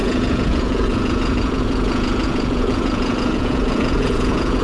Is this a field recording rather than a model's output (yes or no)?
no